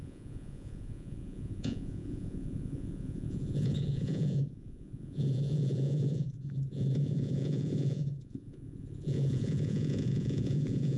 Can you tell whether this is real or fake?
fake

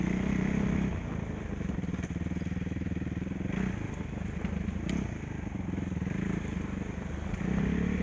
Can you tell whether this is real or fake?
real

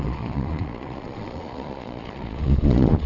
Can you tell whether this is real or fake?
fake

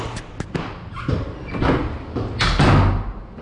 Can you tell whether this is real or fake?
real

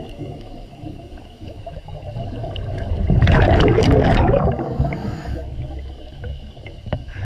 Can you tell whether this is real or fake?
fake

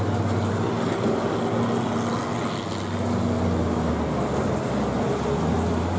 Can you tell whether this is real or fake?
real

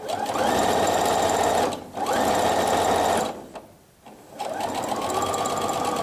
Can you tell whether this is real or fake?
real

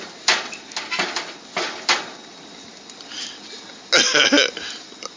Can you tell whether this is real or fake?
real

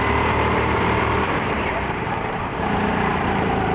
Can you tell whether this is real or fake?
fake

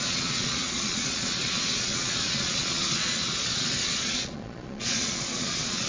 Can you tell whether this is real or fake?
fake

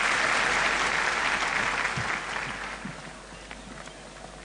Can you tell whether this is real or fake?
real